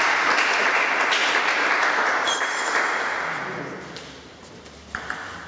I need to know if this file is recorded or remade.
recorded